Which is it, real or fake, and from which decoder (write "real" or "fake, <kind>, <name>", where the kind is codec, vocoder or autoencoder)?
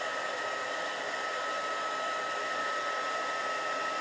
real